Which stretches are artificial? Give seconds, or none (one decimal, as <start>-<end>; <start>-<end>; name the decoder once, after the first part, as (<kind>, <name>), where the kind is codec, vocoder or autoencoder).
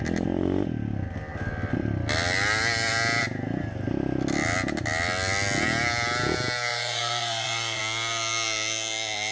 6.7-7.8 (vocoder, Vocos)